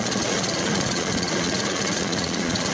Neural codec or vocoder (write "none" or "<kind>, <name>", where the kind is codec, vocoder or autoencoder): vocoder, Vocos